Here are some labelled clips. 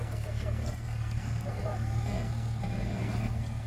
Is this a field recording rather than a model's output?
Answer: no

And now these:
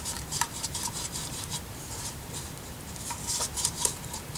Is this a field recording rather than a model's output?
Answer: no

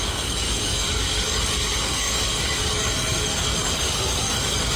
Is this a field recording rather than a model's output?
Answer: no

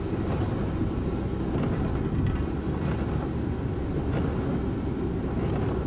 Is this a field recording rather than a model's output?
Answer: yes